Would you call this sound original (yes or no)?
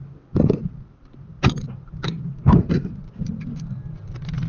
yes